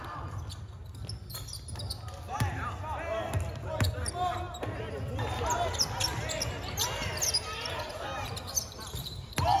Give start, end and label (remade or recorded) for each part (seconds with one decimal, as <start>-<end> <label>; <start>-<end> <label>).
0.0-9.6 recorded